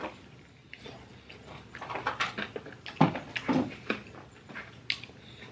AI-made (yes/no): no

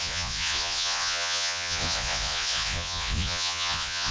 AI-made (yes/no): yes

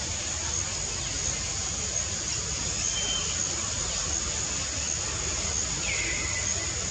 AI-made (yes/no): no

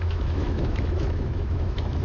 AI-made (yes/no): yes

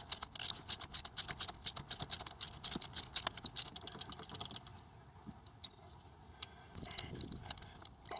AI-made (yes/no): no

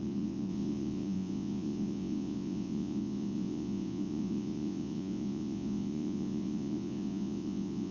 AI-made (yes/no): yes